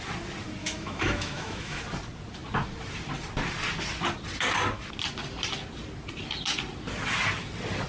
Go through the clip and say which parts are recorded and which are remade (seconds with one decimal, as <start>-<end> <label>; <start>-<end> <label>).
0.0-0.6 recorded; 0.6-1.8 remade; 1.8-7.9 recorded